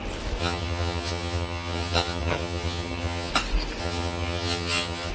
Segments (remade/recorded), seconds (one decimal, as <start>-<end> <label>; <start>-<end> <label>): 0.0-0.4 recorded; 0.4-3.3 remade; 3.3-3.8 recorded; 3.8-5.1 remade